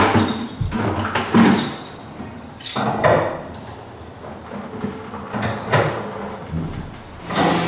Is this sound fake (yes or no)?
no